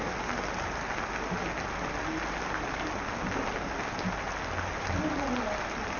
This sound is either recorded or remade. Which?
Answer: recorded